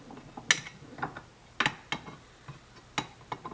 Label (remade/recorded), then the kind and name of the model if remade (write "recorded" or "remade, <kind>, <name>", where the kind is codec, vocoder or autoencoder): recorded